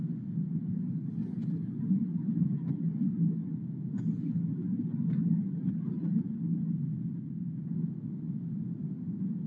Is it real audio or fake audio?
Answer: real